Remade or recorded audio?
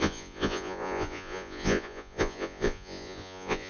remade